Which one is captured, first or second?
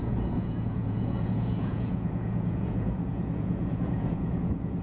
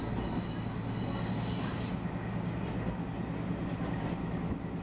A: second